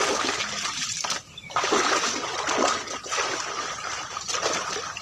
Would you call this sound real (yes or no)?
yes